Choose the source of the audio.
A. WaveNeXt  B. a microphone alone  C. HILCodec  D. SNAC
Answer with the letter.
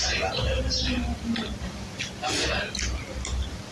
B